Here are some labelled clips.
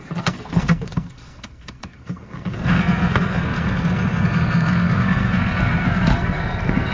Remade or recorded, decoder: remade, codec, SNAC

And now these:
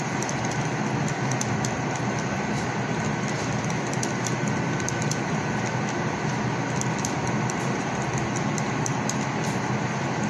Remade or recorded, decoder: recorded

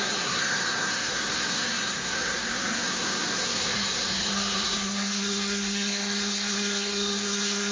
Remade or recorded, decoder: remade, codec, SNAC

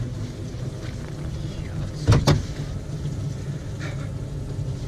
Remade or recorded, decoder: recorded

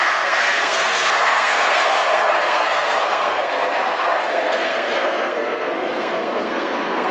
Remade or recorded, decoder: remade, codec, SNAC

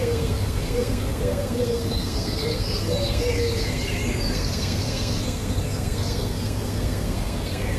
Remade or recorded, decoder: remade, codec, SNAC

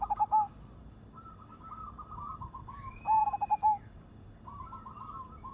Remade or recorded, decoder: recorded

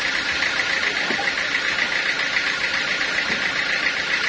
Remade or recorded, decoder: recorded